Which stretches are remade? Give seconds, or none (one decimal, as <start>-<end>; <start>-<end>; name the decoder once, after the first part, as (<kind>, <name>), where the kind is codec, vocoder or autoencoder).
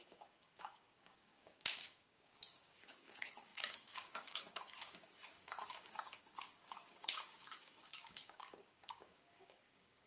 0.0-10.1 (codec, DAC)